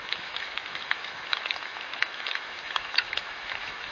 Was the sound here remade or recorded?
remade